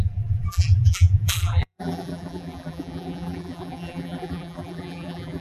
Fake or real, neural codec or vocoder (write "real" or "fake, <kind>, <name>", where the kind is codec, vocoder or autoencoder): fake, vocoder, BigVGAN v2